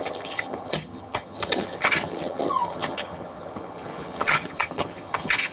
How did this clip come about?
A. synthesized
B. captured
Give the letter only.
A